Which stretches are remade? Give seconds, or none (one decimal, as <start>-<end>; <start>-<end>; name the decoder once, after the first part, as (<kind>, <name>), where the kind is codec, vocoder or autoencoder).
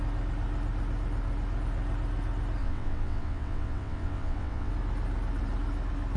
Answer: 2.6-4.7 (vocoder, WaveNeXt)